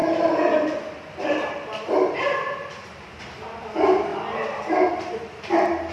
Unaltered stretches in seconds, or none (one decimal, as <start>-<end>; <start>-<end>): 0.0-5.9